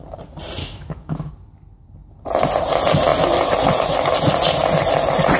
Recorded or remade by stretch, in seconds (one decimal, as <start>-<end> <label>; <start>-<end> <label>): 0.0-0.6 recorded; 0.6-1.3 remade; 1.3-5.4 recorded

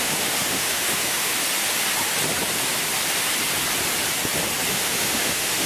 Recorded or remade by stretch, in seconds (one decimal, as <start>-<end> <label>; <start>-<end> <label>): 0.0-1.3 remade; 1.3-4.7 recorded; 4.7-5.7 remade

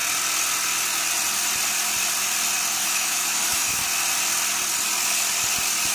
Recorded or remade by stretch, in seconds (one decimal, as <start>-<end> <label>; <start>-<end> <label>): 0.0-2.8 recorded; 2.8-3.8 remade; 3.8-5.9 recorded

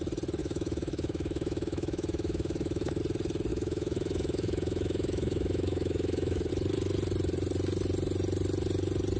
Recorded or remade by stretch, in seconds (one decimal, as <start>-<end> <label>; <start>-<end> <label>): 0.0-0.4 recorded; 0.4-3.0 remade; 3.0-3.5 recorded; 3.5-6.5 remade; 6.5-9.2 recorded

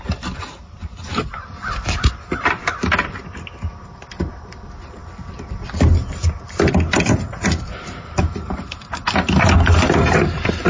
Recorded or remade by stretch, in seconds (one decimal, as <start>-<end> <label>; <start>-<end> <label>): 0.0-10.7 recorded

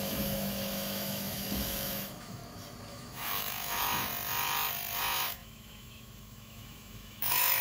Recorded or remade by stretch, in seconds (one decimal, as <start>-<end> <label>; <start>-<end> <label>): 0.0-2.4 remade; 2.4-2.9 recorded; 2.9-4.1 remade; 4.1-5.0 recorded; 5.0-7.6 remade